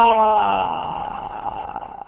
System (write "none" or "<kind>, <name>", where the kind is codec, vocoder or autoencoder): codec, HILCodec